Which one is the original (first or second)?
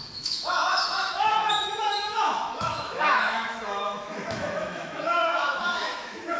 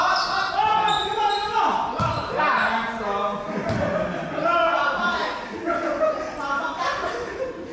second